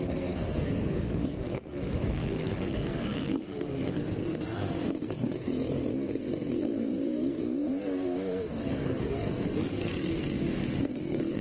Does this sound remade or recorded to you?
remade